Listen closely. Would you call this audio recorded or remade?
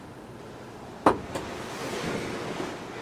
recorded